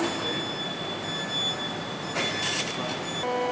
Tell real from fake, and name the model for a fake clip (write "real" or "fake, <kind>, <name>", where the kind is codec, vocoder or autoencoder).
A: real